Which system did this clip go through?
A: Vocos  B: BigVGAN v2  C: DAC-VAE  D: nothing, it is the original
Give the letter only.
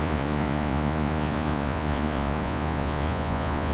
A